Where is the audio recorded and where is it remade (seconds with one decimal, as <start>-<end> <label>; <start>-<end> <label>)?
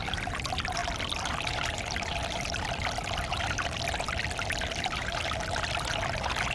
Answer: 0.0-6.5 recorded